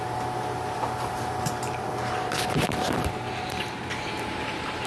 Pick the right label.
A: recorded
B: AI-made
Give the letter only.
B